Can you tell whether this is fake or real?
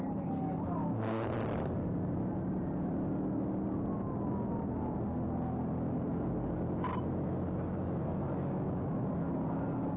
real